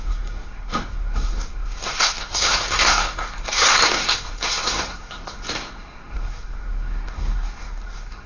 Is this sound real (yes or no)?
no